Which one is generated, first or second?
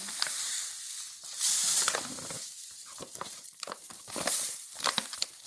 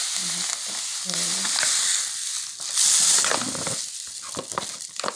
first